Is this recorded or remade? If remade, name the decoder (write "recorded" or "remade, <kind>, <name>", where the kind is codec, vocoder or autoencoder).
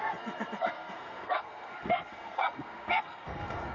remade, codec, SNAC